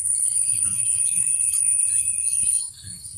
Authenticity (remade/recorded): remade